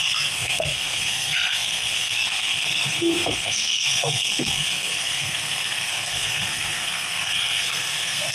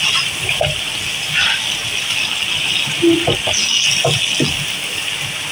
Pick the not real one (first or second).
first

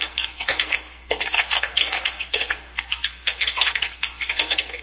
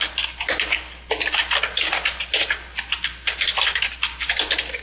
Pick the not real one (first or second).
first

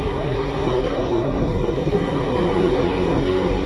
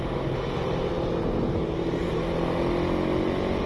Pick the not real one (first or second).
first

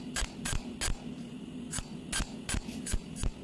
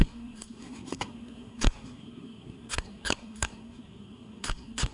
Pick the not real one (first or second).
second